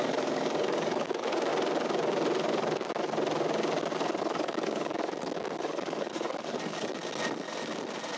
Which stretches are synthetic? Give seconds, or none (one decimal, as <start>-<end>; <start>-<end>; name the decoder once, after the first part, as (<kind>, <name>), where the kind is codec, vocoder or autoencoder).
0.0-1.5 (codec, DAC); 4.2-7.0